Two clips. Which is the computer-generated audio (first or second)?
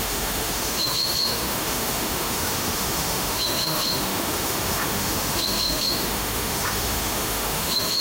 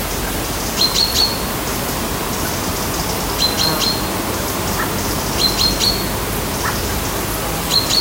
first